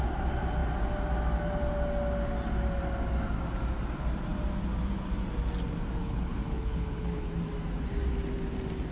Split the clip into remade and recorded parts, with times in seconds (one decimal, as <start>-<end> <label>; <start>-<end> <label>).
0.0-6.0 recorded; 6.0-7.3 remade; 7.3-8.9 recorded